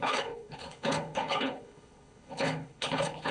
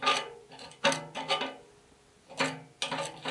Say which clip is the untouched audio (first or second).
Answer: second